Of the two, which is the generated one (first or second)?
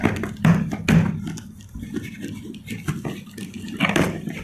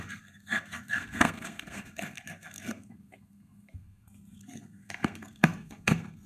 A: second